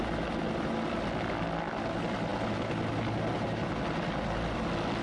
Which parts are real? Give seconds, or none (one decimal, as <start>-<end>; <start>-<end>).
0.0-5.0